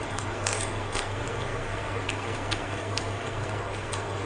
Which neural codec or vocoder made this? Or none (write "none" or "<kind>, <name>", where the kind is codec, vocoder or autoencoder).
codec, SNAC